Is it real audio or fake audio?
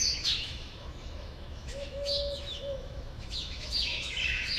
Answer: fake